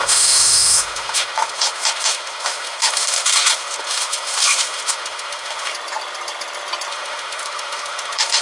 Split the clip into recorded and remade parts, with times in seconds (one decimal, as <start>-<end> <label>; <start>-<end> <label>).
0.0-5.7 remade; 5.7-6.9 recorded; 6.9-8.4 remade